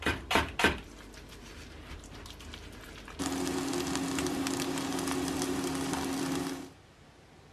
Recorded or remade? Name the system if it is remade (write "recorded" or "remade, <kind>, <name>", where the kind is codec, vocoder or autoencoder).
remade, vocoder, BigVGAN v2